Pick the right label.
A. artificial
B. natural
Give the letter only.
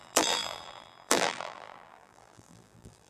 A